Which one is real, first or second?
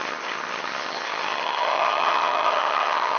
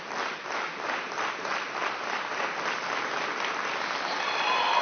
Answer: second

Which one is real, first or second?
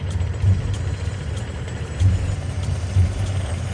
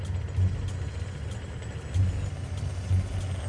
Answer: second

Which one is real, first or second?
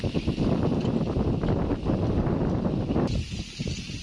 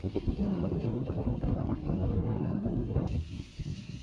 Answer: first